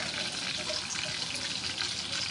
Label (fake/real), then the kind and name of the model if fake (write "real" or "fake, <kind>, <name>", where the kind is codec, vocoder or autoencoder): real